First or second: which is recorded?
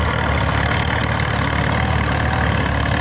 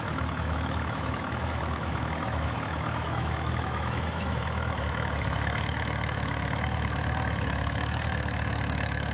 first